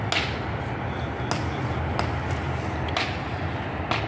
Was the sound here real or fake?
real